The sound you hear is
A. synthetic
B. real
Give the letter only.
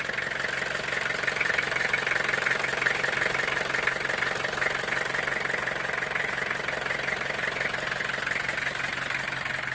B